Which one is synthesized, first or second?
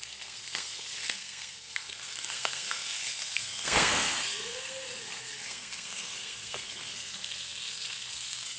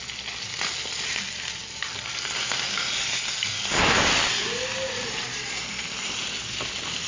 first